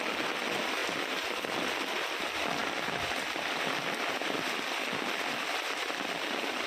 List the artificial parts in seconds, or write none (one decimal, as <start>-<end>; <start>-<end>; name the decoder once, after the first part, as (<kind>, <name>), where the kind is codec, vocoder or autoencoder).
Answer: none